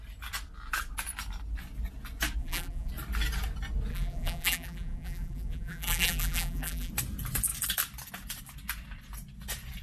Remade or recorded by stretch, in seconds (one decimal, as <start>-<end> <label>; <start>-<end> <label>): 0.0-2.4 recorded; 2.4-2.9 remade; 2.9-3.9 recorded; 3.9-6.9 remade; 6.9-9.8 recorded